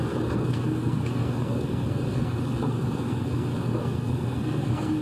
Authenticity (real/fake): fake